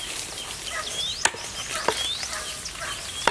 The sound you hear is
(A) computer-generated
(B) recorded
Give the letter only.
B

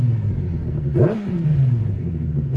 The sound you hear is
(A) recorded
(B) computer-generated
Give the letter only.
B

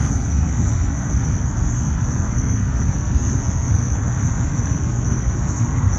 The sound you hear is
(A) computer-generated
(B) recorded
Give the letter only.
A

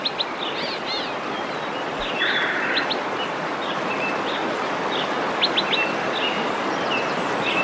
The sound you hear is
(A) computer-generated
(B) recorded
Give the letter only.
B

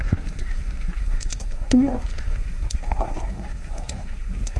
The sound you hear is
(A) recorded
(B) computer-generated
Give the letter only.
B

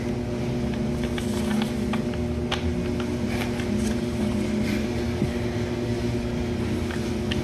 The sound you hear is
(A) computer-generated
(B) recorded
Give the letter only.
B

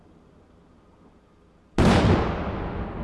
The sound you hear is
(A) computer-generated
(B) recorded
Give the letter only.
B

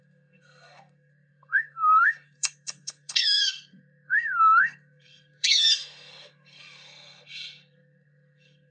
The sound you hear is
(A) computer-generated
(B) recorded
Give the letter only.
A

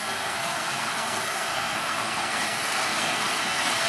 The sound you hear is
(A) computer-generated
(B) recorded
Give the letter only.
A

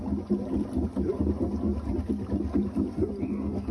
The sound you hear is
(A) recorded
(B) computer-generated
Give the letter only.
A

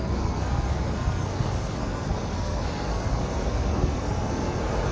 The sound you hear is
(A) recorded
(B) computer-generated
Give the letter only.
B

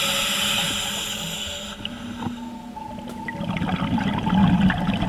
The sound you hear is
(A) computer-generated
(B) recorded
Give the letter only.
B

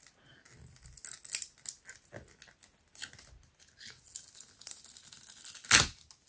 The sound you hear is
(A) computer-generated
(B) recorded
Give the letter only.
B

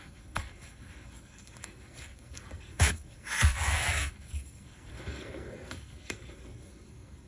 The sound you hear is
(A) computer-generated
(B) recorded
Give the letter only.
A